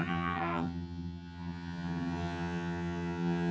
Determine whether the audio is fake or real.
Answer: fake